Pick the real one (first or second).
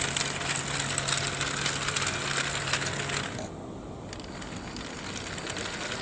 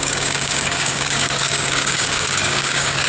first